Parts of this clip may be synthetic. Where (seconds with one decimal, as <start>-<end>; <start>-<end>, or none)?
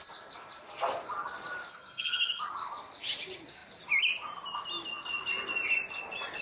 1.7-2.4